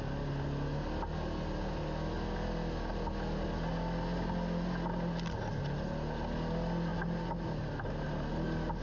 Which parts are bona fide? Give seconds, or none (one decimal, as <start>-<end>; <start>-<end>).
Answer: 0.0-8.8